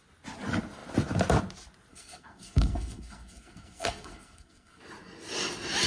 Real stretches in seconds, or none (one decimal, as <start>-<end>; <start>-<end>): 0.0-1.9; 4.8-5.9